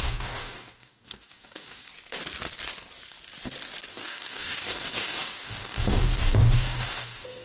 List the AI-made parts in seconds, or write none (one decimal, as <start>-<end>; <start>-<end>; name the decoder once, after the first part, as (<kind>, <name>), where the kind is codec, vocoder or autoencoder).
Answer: 0.0-1.9 (codec, DAC); 3.9-7.4